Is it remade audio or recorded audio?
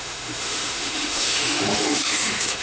remade